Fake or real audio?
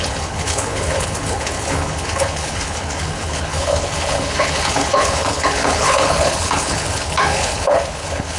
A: fake